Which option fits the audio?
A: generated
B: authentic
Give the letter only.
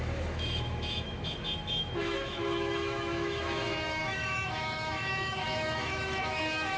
A